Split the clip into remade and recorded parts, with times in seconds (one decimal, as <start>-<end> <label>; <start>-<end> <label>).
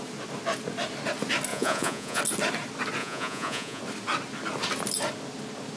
0.0-1.5 recorded; 1.5-2.2 remade; 2.2-3.0 recorded; 3.0-3.8 remade; 3.8-5.8 recorded